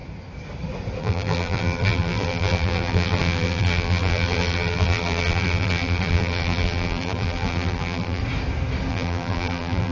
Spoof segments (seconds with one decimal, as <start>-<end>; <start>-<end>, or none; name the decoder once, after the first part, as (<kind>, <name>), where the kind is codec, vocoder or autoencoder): 1.0-8.2 (vocoder, BigVGAN v2); 8.9-9.9